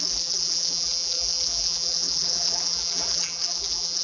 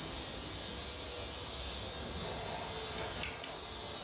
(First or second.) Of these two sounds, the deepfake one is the first